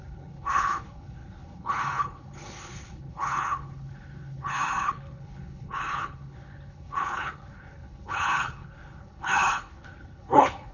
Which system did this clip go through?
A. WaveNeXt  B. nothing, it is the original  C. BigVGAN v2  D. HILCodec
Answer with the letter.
D